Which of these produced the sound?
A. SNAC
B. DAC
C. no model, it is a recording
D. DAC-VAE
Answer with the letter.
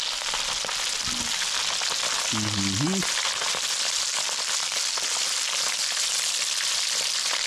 C